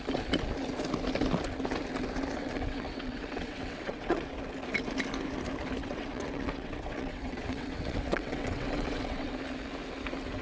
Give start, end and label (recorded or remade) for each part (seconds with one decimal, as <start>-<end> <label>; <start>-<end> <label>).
0.0-2.4 recorded; 2.4-4.3 remade; 4.3-5.8 recorded; 5.8-9.3 remade; 9.3-10.4 recorded